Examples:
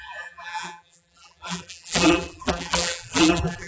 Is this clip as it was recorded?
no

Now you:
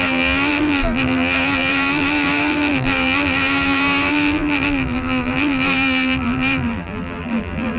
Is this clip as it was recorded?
no